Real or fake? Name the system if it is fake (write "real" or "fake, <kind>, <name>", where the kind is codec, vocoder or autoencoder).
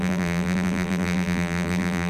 fake, vocoder, BigVGAN v2